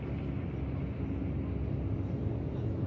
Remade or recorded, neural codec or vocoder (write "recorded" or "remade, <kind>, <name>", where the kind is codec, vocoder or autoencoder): recorded